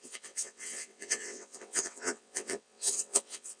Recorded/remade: remade